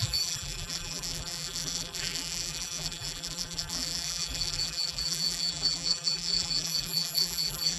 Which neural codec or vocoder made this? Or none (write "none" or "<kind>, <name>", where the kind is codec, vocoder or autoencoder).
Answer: vocoder, BigVGAN v2